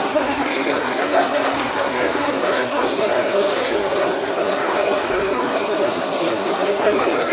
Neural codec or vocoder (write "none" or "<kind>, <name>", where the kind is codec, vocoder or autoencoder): codec, SNAC